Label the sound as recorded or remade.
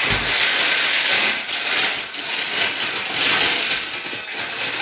recorded